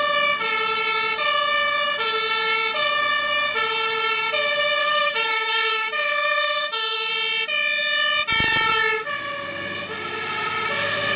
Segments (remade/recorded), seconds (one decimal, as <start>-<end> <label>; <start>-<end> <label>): 0.0-4.8 recorded; 4.8-7.1 remade; 7.1-11.2 recorded